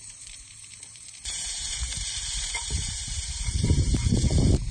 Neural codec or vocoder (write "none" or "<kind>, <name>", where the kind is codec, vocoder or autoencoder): vocoder, BigVGAN v2